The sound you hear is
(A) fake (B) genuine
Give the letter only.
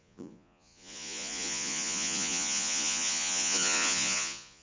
A